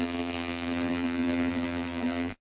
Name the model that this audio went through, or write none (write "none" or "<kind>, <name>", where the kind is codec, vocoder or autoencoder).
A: vocoder, BigVGAN v2